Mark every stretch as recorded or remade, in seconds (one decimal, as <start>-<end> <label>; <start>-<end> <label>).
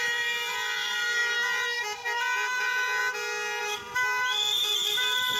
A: 0.0-3.0 remade; 3.0-3.6 recorded; 3.6-5.4 remade